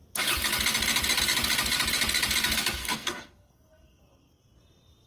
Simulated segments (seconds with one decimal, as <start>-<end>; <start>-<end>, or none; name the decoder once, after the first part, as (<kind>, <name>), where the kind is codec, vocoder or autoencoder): 2.8-4.3 (codec, SNAC)